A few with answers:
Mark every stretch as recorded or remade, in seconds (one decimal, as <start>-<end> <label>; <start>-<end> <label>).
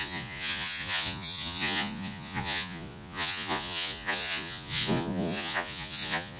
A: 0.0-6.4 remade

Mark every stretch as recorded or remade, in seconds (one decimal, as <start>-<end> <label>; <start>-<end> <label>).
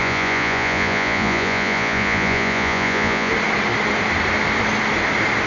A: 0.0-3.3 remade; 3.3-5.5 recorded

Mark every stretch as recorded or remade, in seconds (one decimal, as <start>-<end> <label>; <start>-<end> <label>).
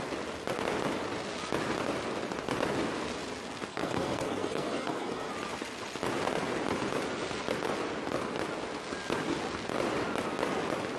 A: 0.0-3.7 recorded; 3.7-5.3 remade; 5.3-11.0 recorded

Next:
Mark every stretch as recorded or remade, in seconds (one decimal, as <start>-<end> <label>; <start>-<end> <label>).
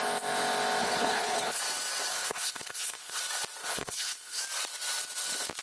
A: 0.0-0.8 recorded; 0.8-1.6 remade; 1.6-2.1 recorded; 2.1-3.2 remade; 3.2-3.6 recorded; 3.6-4.4 remade; 4.4-5.6 recorded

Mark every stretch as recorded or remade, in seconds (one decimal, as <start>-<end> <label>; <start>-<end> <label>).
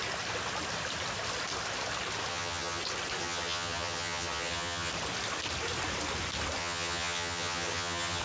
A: 0.0-2.3 recorded; 2.3-2.8 remade; 2.8-3.2 recorded; 3.2-4.9 remade; 4.9-6.6 recorded; 6.6-8.2 remade